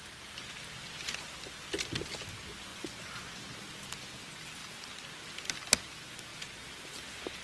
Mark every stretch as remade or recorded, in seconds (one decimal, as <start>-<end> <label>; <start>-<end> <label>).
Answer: 0.0-2.7 recorded; 2.7-3.4 remade; 3.4-7.4 recorded